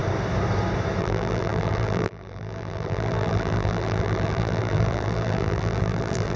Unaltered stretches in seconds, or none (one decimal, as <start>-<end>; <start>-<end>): 0.0-1.0